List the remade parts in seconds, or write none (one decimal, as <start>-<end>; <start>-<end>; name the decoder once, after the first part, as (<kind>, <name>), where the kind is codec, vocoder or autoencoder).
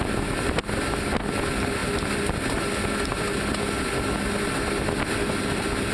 none